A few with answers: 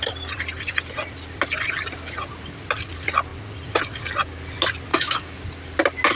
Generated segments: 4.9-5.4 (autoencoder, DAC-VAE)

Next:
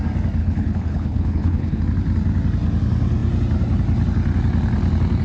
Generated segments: 0.4-1.8 (codec, HILCodec)

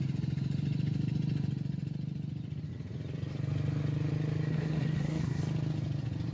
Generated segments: 4.5-5.4 (codec, SNAC)